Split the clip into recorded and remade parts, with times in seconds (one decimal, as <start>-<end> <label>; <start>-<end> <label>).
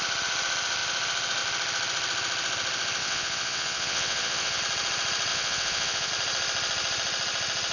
0.0-3.0 recorded; 3.0-4.6 remade; 4.6-5.3 recorded; 5.3-6.1 remade; 6.1-7.7 recorded